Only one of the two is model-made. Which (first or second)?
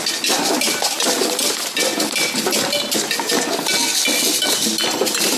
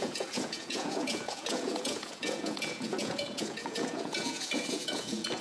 second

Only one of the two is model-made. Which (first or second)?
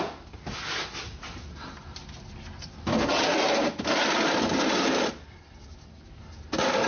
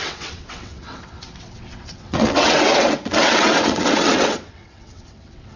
second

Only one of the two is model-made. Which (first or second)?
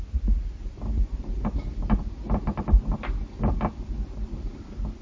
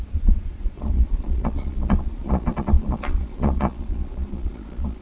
second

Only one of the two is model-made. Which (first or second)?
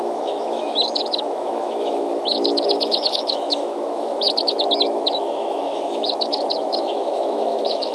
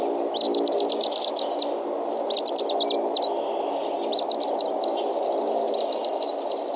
first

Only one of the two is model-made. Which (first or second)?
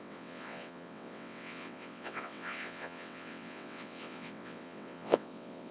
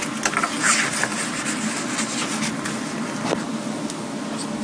first